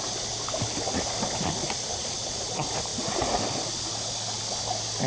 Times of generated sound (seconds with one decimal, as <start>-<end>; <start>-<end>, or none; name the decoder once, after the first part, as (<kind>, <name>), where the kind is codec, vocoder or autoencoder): 1.6-2.5 (vocoder, Vocos)